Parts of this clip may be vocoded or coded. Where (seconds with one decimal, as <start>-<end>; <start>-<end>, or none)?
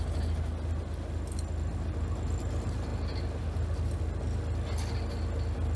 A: none